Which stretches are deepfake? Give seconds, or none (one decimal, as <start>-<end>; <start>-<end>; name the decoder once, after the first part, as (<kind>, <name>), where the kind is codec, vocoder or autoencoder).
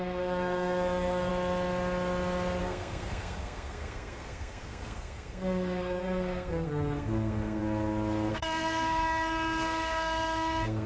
0.0-1.3 (codec, SNAC); 2.6-7.6; 8.3-10.9